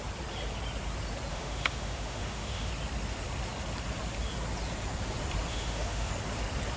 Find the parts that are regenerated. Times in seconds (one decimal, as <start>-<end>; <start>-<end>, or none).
1.3-2.7; 5.5-6.1